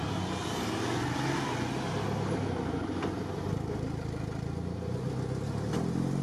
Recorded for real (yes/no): yes